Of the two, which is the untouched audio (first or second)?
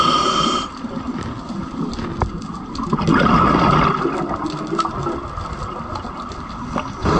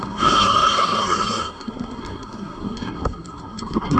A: first